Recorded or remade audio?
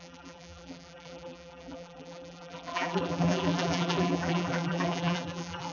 remade